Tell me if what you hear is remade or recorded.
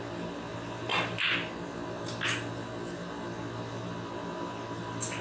recorded